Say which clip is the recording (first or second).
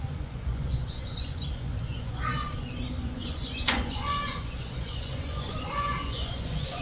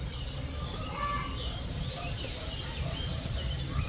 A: second